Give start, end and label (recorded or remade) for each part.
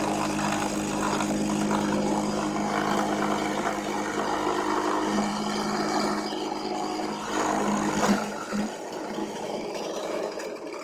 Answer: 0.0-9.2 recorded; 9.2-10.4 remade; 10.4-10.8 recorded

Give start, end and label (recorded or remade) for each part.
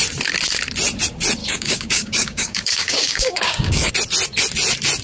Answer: 0.0-1.4 recorded; 1.4-3.9 remade; 3.9-5.0 recorded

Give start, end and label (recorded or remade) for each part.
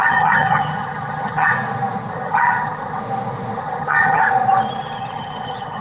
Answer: 0.0-1.5 remade; 1.5-2.1 recorded; 2.1-3.0 remade; 3.0-3.6 recorded; 3.6-4.2 remade; 4.2-4.8 recorded; 4.8-5.8 remade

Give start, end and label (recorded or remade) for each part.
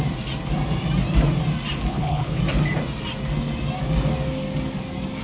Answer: 0.0-1.9 recorded; 1.9-2.4 remade; 2.4-5.2 recorded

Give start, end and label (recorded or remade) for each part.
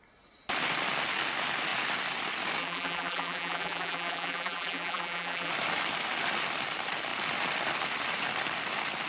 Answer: 0.0-2.6 recorded; 2.6-5.5 remade; 5.5-9.1 recorded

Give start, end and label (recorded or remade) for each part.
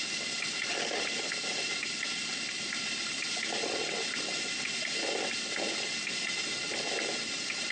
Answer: 0.0-7.7 recorded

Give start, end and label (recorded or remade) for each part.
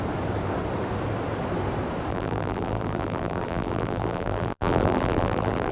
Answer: 0.0-2.1 recorded; 2.1-5.7 remade